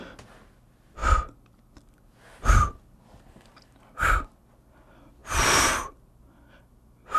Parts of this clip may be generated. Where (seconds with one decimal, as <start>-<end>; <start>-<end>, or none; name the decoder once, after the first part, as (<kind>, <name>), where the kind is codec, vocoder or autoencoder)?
none